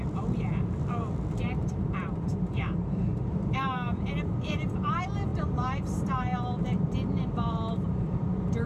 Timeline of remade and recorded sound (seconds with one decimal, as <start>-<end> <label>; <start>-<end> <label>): 0.0-8.7 remade